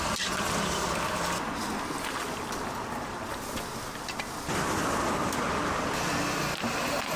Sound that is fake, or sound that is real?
real